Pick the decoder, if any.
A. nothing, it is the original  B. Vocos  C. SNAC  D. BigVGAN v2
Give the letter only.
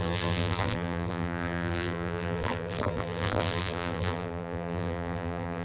D